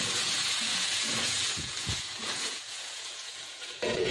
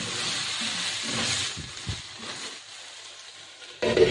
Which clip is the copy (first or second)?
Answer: first